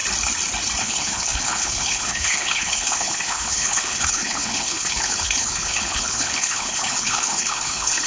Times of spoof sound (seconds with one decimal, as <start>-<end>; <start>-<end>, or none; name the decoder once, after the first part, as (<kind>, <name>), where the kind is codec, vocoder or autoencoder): 0.8-8.1 (codec, HILCodec)